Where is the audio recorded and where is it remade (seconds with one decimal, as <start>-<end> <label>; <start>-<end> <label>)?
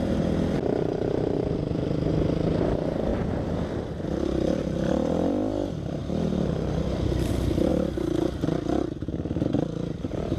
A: 0.0-3.1 remade; 3.1-3.7 recorded; 3.7-7.7 remade; 7.7-9.5 recorded; 9.5-10.4 remade